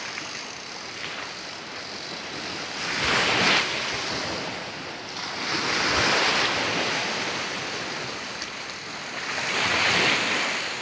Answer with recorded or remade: recorded